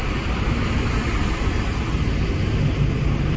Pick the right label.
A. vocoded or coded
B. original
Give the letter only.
B